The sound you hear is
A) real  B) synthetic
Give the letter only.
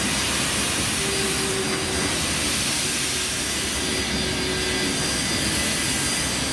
A